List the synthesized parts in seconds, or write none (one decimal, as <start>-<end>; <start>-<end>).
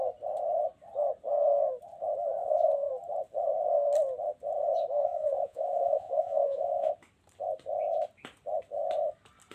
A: 2.4-2.9; 5.0-6.9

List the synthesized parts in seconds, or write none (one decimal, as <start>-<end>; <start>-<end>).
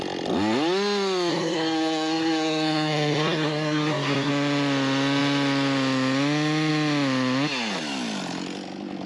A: 1.3-4.3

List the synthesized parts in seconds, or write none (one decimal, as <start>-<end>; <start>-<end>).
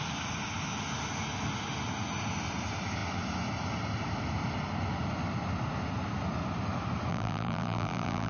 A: 7.1-8.3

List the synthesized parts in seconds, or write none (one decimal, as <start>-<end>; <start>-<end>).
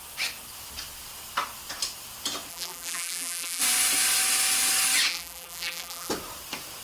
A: 2.5-3.6; 5.1-6.1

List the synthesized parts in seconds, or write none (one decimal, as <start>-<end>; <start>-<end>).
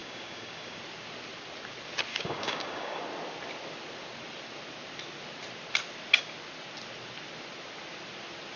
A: 0.0-0.8; 2.1-3.0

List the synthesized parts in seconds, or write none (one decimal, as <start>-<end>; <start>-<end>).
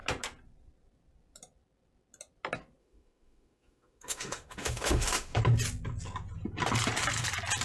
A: 2.8-5.4